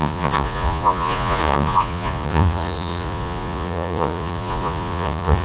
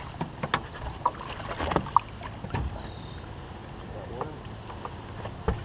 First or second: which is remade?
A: first